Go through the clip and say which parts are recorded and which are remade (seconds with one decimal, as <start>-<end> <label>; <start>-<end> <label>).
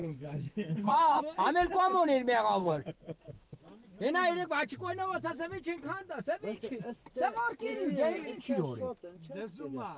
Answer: 0.0-1.2 remade; 1.2-2.6 recorded; 2.6-3.7 remade; 3.7-10.0 recorded